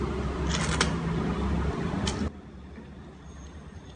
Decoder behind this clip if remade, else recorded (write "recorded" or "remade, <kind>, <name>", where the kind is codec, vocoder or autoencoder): recorded